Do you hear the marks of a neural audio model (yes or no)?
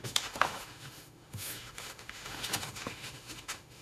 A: yes